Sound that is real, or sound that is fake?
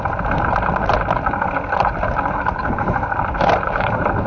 real